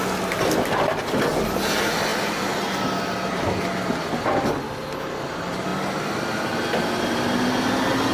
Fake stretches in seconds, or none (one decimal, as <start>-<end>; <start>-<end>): none